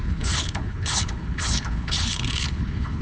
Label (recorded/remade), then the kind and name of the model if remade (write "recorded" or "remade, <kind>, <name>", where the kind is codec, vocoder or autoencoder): remade, codec, HILCodec